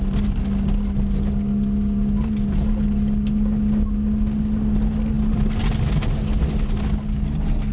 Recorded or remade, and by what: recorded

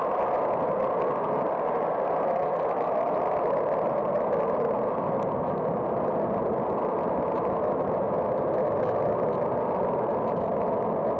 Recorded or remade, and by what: recorded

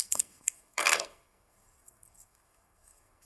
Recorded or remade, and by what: remade, codec, SNAC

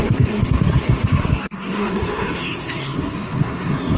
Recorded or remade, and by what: remade, codec, SNAC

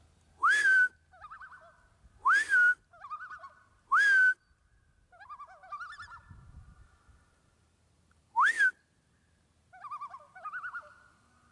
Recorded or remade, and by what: recorded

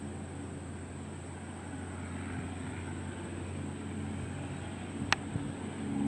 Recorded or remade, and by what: recorded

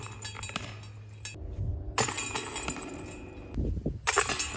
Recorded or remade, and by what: recorded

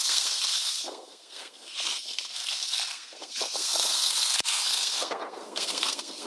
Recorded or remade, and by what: remade, codec, SNAC